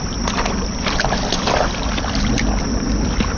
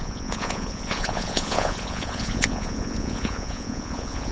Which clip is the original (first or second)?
first